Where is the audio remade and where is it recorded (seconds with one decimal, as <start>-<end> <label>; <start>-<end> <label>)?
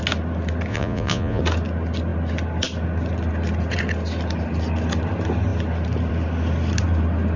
0.0-0.7 recorded; 0.7-1.4 remade; 1.4-7.4 recorded